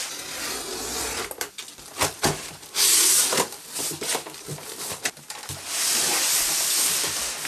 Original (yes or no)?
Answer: yes